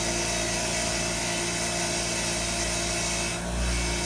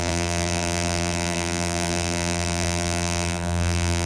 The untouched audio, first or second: first